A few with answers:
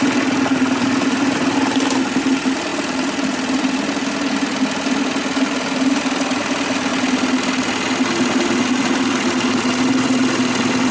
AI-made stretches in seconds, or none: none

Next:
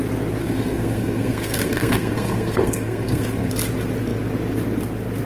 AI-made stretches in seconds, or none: 0.4-3.5

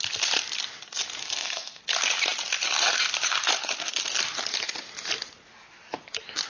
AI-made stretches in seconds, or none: 1.2-1.8

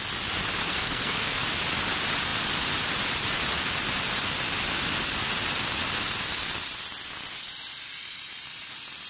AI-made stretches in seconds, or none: 0.6-1.4

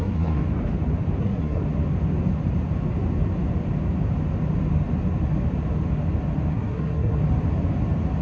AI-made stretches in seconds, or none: 0.0-0.4; 1.2-1.6; 6.5-7.2

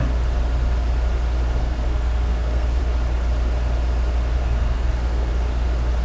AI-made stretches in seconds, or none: 1.6-2.8; 4.4-5.3

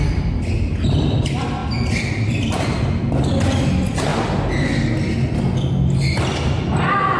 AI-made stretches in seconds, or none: none

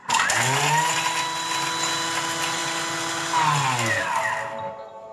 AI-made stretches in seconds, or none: none